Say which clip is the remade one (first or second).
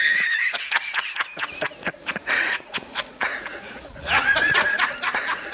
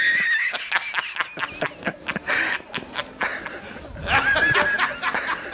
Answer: first